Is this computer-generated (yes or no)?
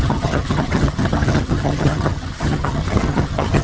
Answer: yes